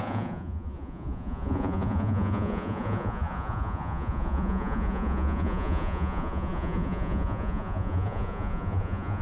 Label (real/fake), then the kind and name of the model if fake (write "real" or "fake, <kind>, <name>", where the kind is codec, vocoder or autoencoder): fake, vocoder, Vocos